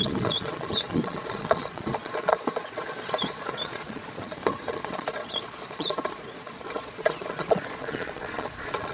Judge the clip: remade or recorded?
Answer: remade